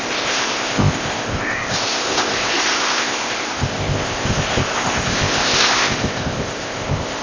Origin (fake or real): fake